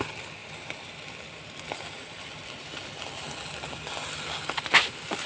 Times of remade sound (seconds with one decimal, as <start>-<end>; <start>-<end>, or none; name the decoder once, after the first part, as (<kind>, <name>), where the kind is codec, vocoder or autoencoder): 0.4-2.8 (vocoder, BigVGAN v2)